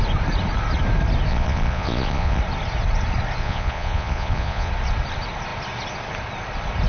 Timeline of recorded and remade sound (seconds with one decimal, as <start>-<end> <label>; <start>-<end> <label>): 0.0-1.3 recorded; 1.3-2.4 remade; 2.4-3.4 recorded; 3.4-4.7 remade; 4.7-6.9 recorded